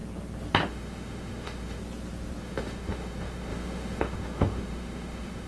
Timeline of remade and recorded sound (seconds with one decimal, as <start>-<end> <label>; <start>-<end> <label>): 0.0-0.7 recorded; 0.7-1.8 remade; 1.8-2.4 recorded; 2.4-5.5 remade